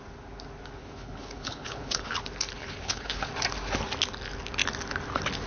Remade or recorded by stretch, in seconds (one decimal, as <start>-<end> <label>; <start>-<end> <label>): 0.0-0.8 recorded; 0.8-2.1 remade; 2.1-2.6 recorded; 2.6-3.3 remade; 3.3-5.5 recorded